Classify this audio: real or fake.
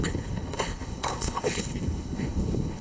fake